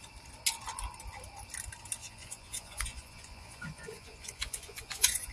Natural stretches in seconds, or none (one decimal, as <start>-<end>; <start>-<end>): 0.0-2.0